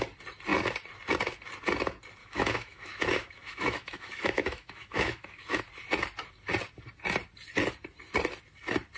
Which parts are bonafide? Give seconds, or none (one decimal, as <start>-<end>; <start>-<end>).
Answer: 0.0-2.2; 5.6-9.0